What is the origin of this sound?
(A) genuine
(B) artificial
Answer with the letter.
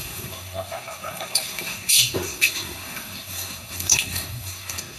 B